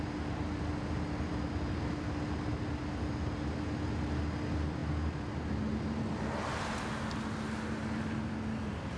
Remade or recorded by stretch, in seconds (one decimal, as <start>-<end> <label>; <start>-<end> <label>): 0.0-9.0 recorded